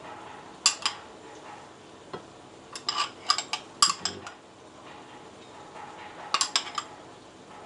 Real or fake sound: real